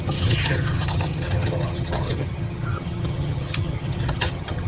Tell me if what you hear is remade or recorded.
remade